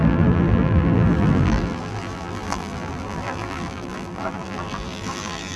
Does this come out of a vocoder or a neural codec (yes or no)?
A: yes